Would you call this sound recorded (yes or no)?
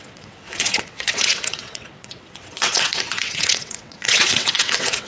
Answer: no